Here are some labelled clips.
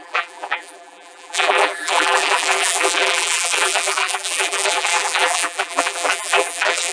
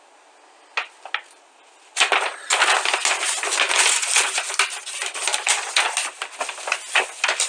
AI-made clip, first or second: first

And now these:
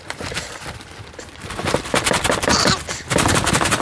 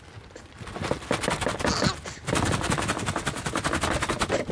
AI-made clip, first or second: first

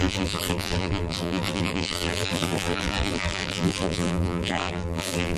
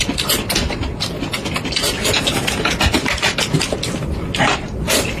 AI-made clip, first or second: first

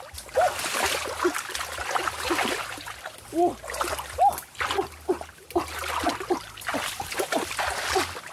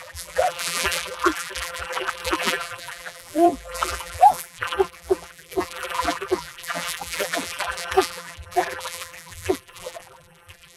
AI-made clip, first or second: second